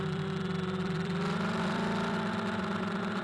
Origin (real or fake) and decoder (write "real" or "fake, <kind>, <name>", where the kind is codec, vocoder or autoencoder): fake, vocoder, BigVGAN v2